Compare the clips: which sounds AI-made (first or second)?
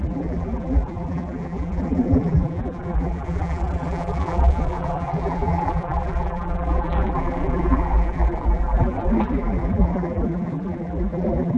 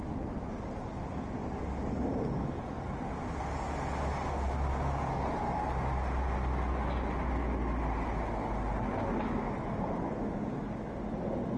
first